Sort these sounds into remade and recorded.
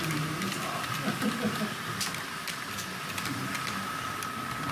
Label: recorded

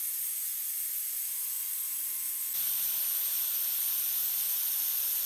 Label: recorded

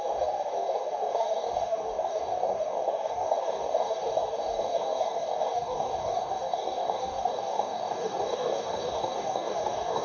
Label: remade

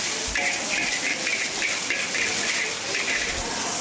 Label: recorded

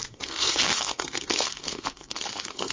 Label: remade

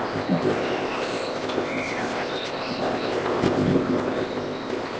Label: remade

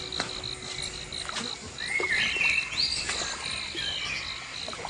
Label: recorded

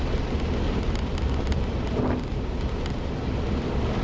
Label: recorded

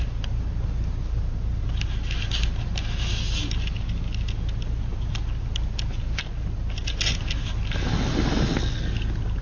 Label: recorded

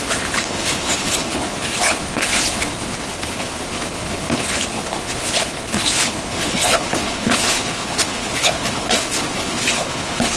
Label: remade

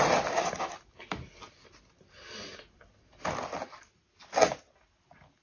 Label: recorded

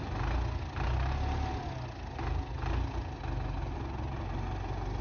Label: recorded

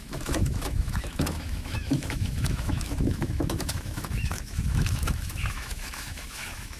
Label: remade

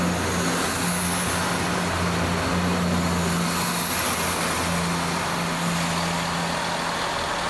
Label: recorded